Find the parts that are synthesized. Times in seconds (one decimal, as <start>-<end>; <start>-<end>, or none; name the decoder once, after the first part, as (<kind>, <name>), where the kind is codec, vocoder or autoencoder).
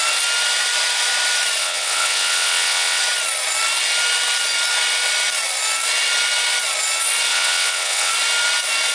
1.6-3.0 (vocoder, WaveNeXt); 7.3-8.1